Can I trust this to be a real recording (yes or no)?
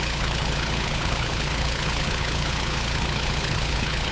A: no